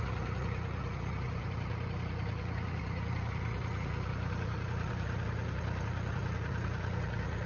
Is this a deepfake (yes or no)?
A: yes